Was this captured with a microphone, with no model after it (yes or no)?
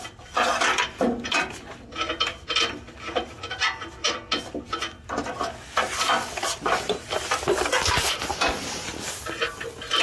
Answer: yes